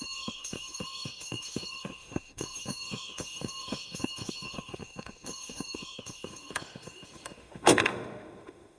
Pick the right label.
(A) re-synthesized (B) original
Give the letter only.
A